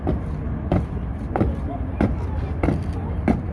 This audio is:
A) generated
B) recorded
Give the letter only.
B